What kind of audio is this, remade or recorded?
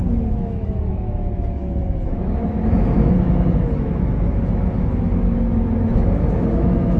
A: remade